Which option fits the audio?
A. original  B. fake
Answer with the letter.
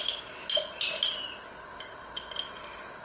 A